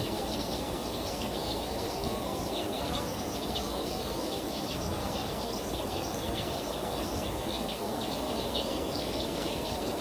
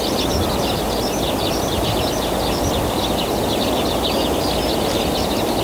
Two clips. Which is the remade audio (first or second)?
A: first